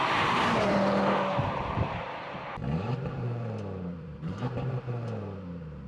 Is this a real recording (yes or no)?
no